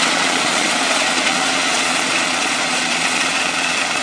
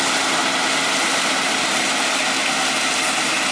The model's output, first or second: first